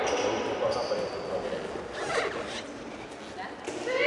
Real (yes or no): yes